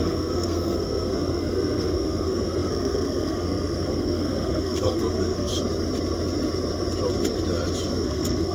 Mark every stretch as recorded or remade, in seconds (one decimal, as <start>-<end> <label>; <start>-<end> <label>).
0.0-5.5 remade; 5.5-7.9 recorded; 7.9-8.5 remade